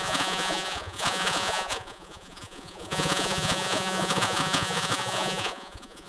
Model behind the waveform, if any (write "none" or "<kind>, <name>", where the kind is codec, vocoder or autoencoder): vocoder, Vocos